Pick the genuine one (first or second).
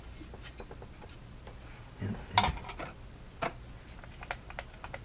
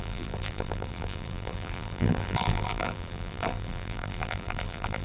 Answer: first